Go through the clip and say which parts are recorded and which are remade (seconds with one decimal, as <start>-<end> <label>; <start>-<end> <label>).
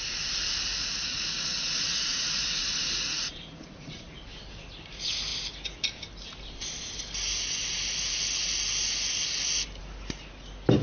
0.0-0.8 recorded; 0.8-4.2 remade; 4.2-10.8 recorded